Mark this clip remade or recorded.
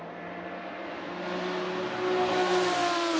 recorded